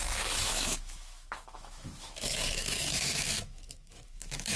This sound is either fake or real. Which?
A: fake